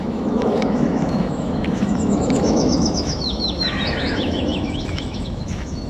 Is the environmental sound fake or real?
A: fake